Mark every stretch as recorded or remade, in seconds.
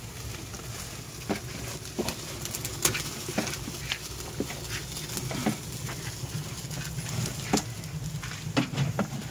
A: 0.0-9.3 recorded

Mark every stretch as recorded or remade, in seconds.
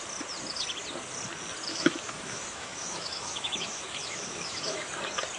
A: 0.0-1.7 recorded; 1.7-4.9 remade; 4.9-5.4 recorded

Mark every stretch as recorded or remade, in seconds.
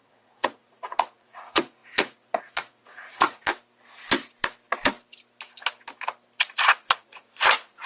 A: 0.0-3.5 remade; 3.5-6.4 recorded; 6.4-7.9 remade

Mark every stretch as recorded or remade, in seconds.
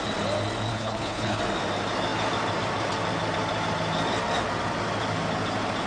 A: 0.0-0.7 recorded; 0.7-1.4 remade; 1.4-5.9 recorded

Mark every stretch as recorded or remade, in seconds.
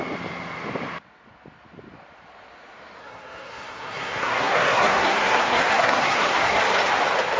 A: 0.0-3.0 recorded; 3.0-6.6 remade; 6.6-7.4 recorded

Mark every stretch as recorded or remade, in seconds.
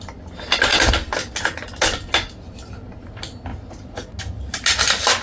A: 0.0-3.5 recorded; 3.5-4.2 remade; 4.2-5.2 recorded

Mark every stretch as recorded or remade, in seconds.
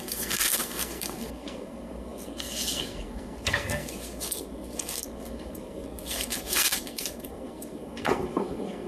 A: 0.0-8.9 remade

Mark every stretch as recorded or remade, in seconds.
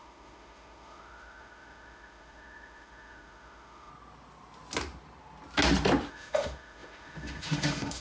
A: 0.0-3.9 remade; 3.9-6.1 recorded; 6.1-8.0 remade